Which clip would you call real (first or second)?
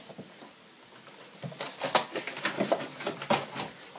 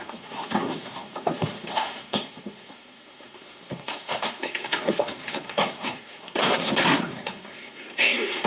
first